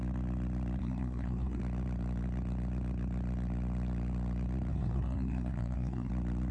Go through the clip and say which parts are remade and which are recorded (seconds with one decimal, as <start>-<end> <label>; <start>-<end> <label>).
0.0-0.8 recorded; 0.8-1.6 remade; 1.6-4.7 recorded; 4.7-6.1 remade; 6.1-6.5 recorded

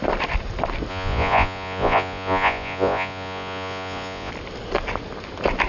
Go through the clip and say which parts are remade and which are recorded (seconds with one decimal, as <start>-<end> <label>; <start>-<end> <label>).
0.0-0.9 recorded; 0.9-4.3 remade; 4.3-5.7 recorded

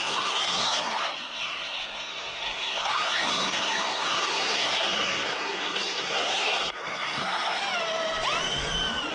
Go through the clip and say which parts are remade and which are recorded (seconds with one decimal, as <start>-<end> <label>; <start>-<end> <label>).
0.0-7.6 remade; 7.6-9.1 recorded

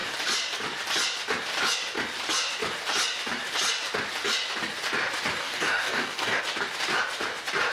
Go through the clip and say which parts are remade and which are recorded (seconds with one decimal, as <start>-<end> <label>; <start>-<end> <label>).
0.0-5.4 recorded; 5.4-6.4 remade; 6.4-7.7 recorded

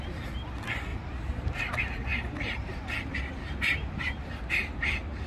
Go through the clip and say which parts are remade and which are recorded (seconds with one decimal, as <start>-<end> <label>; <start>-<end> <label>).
0.0-0.9 recorded; 0.9-1.7 remade; 1.7-2.1 recorded; 2.1-4.3 remade; 4.3-5.3 recorded

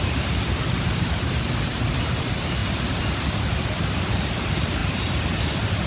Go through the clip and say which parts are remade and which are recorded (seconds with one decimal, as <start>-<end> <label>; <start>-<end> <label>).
0.0-2.6 remade; 2.6-3.4 recorded; 3.4-4.8 remade; 4.8-5.9 recorded